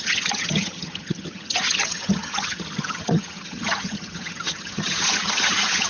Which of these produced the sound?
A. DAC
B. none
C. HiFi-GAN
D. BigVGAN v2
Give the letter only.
C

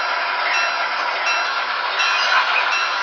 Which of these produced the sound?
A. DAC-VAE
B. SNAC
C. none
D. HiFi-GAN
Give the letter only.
C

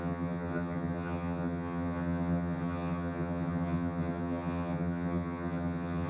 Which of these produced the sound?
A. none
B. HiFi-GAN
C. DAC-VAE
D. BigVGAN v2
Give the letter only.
B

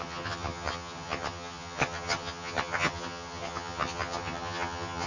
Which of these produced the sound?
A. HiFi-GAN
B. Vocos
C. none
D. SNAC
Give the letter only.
A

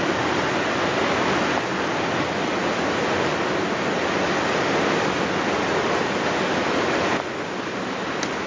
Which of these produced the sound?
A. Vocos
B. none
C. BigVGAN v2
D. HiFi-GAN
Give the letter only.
B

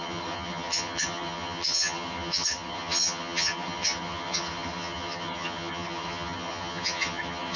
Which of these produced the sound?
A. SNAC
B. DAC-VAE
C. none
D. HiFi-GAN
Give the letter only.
D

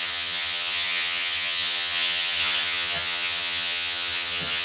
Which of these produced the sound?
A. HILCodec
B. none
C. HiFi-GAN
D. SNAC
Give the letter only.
C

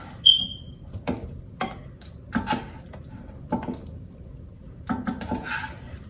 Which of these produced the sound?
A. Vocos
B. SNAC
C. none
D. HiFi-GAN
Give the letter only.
C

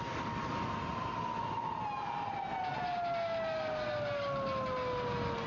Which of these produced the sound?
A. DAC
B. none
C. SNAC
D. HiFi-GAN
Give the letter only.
B